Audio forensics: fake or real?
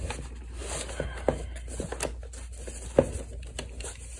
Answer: real